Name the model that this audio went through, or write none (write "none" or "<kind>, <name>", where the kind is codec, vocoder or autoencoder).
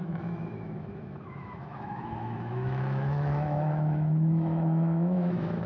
autoencoder, DAC-VAE